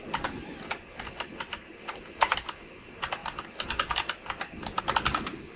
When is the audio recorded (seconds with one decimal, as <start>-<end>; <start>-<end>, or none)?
0.0-5.6